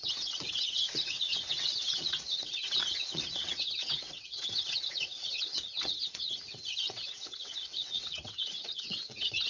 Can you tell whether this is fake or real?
fake